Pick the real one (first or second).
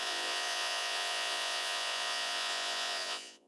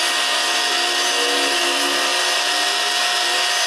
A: second